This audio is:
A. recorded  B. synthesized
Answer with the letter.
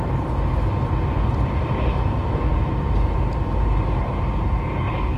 A